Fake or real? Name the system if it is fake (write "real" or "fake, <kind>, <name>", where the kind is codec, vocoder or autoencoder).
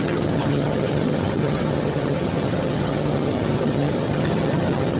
fake, vocoder, HiFi-GAN